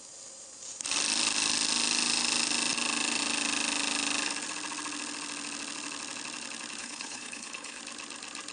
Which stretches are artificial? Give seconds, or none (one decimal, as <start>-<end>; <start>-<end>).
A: 6.8-7.8